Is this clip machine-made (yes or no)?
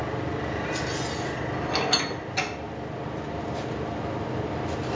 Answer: no